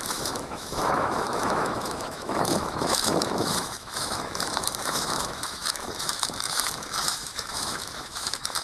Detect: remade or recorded remade